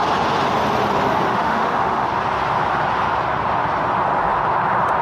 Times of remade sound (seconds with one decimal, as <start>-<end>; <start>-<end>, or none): 1.3-2.1